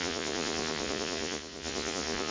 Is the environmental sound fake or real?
fake